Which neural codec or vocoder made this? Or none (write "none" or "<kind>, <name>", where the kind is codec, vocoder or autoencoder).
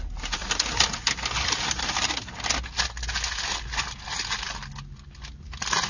none